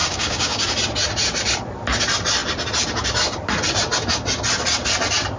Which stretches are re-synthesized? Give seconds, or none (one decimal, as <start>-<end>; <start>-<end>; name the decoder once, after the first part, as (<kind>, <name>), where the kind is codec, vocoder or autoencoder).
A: 0.0-0.6 (codec, DAC)